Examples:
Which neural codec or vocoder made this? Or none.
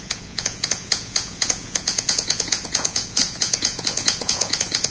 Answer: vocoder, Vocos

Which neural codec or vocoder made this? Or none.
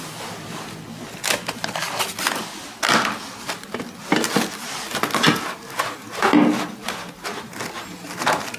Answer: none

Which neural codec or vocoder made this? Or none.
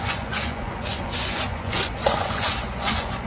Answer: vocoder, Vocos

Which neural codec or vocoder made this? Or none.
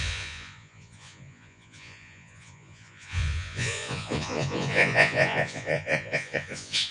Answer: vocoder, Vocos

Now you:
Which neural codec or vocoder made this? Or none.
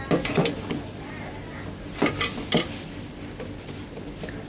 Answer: none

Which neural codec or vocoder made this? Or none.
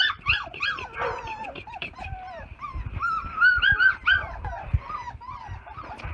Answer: none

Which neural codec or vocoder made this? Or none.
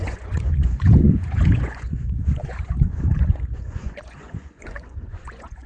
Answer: vocoder, Vocos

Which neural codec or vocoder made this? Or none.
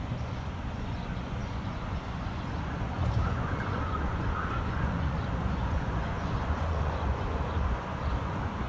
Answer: vocoder, Vocos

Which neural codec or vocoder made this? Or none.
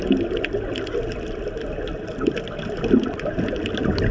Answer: none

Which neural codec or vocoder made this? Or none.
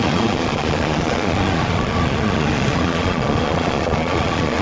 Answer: vocoder, Vocos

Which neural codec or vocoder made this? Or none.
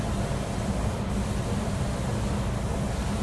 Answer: none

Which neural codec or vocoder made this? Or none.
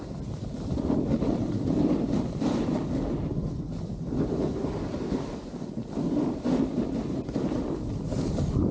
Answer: none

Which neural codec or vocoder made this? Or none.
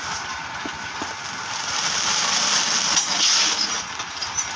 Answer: none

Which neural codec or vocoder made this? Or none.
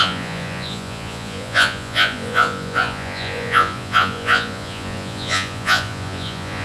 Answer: vocoder, Vocos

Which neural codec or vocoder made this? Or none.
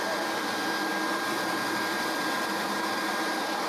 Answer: none